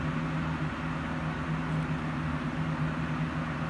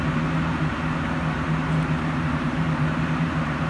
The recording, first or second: first